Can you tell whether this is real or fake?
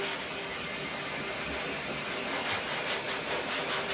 real